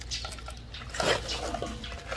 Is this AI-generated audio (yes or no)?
no